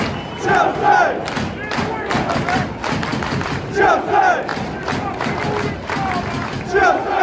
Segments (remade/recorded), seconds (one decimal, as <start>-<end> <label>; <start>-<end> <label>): 0.0-7.2 recorded